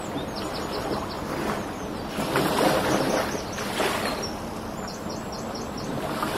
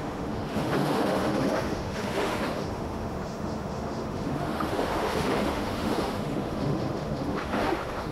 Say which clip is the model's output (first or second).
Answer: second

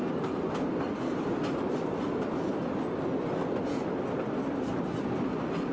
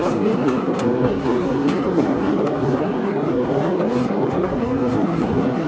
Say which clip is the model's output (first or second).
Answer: second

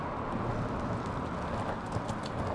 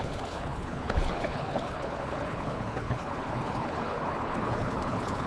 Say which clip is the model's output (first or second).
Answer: second